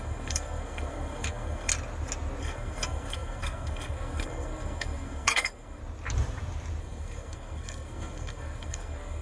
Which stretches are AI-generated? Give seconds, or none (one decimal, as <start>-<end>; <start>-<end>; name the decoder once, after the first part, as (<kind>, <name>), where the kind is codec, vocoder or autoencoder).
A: 0.0-1.7 (codec, SNAC); 2.4-5.8; 6.8-9.2